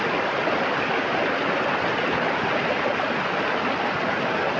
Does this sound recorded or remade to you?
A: recorded